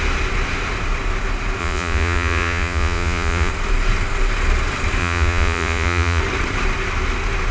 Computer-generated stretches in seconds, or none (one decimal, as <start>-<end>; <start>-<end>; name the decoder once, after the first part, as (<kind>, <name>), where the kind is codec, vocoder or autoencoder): 1.6-3.5 (vocoder, Vocos); 5.0-6.2